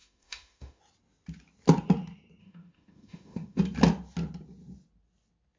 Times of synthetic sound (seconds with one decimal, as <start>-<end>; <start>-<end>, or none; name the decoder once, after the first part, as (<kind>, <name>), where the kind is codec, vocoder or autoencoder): 0.0-0.8 (autoencoder, DAC-VAE); 2.4-3.6